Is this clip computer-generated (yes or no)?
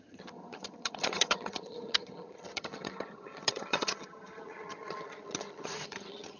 yes